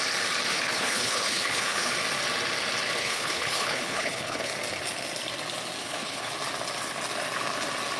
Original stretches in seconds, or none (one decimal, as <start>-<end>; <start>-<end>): 0.0-0.5; 1.9-3.0; 4.5-5.8; 6.3-8.0